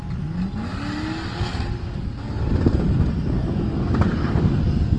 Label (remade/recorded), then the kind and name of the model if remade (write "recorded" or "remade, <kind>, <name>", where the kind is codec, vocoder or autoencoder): recorded